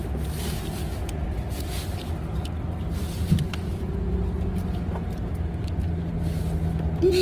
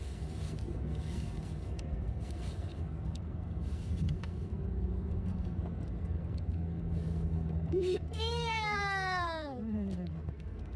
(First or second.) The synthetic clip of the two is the second